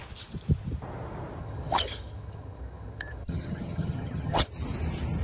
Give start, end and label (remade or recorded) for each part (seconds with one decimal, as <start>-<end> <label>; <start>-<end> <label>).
0.0-1.4 recorded; 1.4-4.5 remade; 4.5-5.2 recorded